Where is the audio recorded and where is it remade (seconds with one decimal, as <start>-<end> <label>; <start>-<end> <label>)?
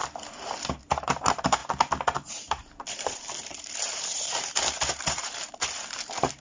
0.0-0.7 recorded; 0.7-1.6 remade; 1.6-2.3 recorded; 2.3-6.4 remade